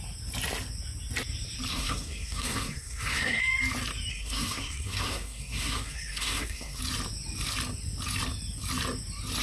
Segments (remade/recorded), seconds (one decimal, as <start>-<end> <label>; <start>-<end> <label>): 0.0-1.7 recorded; 1.7-3.4 remade; 3.4-4.1 recorded; 4.1-6.8 remade; 6.8-9.4 recorded